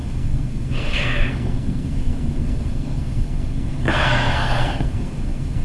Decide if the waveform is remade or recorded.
remade